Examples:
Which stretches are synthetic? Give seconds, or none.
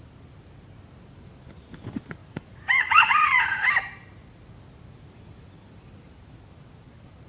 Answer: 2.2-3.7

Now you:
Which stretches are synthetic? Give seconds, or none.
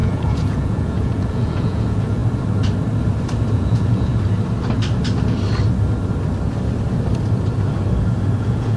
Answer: 0.0-2.2; 3.5-4.1; 8.4-8.8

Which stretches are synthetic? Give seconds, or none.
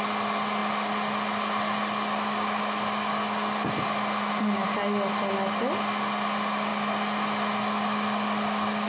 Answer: none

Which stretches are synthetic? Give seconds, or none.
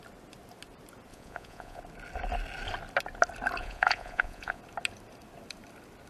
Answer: 1.1-1.8; 3.6-4.6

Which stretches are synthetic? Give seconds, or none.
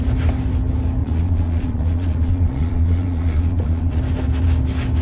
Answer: 1.0-4.0